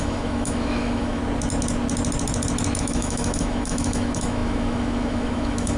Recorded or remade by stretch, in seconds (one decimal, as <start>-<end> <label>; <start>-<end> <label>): 0.0-1.2 remade; 1.2-2.8 recorded; 2.8-5.8 remade